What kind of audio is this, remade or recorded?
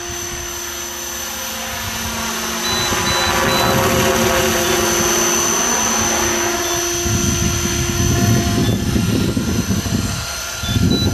recorded